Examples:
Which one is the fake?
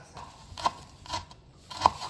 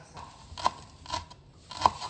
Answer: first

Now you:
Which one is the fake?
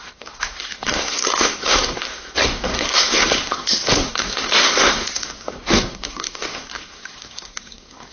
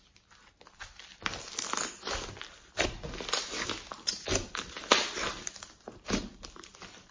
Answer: first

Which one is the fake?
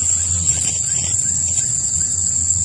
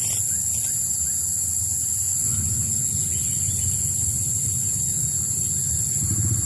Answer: first